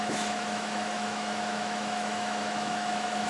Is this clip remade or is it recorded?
remade